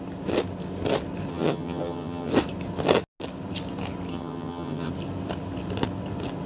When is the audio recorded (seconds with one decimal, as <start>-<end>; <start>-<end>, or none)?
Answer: 0.0-1.3; 2.3-4.1; 4.9-6.5